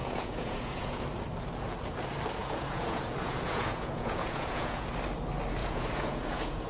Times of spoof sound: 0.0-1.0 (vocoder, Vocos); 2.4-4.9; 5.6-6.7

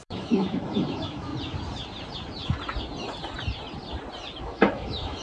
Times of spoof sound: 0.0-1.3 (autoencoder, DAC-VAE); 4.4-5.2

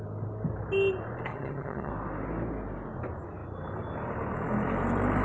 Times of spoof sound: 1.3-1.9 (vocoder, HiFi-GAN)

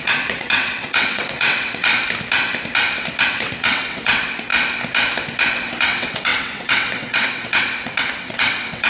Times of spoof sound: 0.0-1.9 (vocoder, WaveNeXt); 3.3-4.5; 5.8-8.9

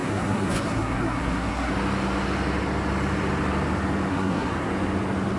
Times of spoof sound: 0.0-1.7 (codec, SNAC); 4.1-4.7

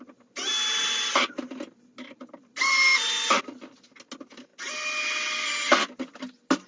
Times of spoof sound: none

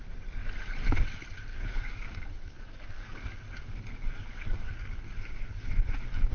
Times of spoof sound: 1.5-5.3 (codec, DAC)

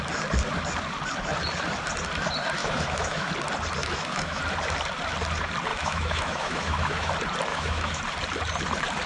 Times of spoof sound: 2.6-3.3 (autoencoder, DAC-VAE); 3.8-4.4; 5.7-7.1; 7.5-8.0